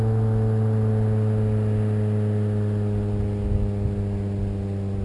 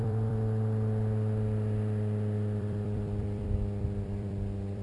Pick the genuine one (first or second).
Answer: first